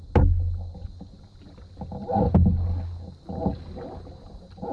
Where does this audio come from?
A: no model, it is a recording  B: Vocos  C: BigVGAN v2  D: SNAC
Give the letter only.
A